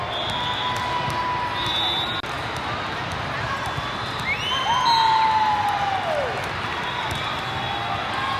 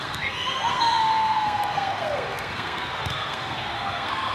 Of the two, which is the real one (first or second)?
first